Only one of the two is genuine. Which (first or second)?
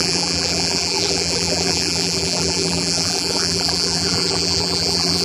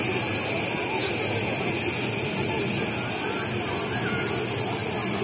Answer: second